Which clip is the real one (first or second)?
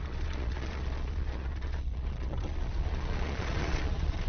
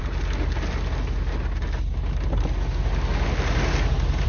second